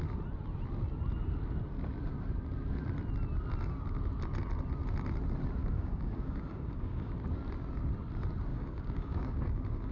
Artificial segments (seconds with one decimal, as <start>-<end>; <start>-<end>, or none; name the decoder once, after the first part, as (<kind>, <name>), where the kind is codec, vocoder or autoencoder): 5.6-7.1 (codec, DAC); 8.5-9.9